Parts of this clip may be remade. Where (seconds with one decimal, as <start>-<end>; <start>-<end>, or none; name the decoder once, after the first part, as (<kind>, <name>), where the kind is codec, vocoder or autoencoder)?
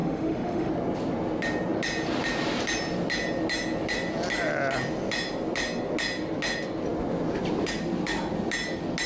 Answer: 0.0-0.7 (autoencoder, DAC-VAE)